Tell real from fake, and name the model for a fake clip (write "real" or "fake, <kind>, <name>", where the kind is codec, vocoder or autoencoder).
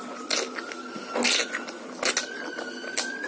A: real